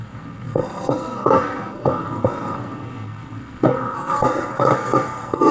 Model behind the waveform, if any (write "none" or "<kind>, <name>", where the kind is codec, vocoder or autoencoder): codec, SNAC